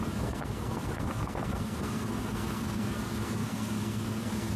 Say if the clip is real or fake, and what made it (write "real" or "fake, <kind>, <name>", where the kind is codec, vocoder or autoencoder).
fake, codec, SNAC